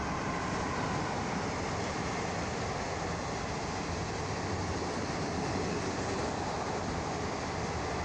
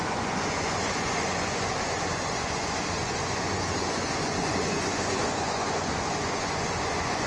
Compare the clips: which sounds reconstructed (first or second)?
second